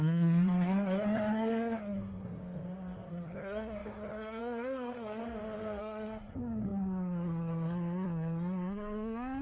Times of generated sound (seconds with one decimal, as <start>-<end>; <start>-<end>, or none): 0.0-2.4; 3.1-5.2; 5.8-9.4